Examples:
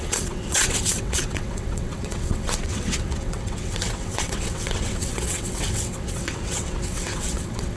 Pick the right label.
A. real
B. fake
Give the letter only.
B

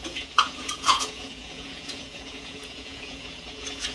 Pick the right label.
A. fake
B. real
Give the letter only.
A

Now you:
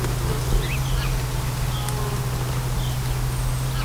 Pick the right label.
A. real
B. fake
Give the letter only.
A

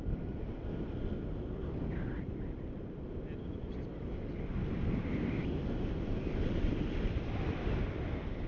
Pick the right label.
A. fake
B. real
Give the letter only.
B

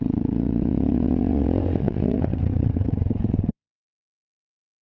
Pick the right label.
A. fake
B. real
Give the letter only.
A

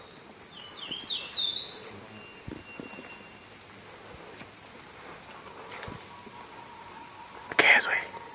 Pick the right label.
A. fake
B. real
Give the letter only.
B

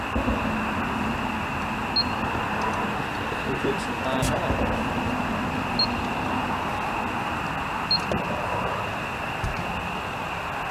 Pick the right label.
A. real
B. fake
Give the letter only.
A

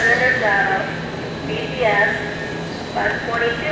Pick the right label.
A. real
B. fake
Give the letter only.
A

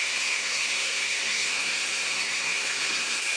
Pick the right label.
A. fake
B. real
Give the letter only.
A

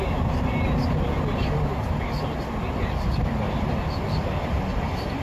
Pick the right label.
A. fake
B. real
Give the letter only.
B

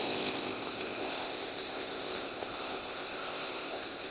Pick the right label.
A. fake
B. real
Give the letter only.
A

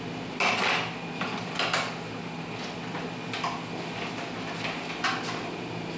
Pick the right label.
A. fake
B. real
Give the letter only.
B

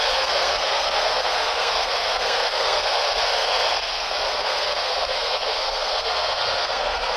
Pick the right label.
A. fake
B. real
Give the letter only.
A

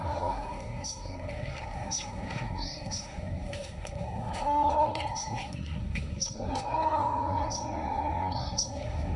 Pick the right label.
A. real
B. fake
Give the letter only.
B